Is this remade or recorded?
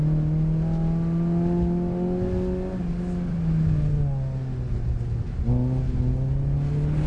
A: recorded